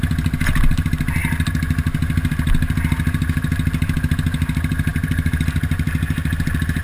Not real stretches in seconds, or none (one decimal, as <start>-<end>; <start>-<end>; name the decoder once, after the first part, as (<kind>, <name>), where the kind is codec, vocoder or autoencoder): none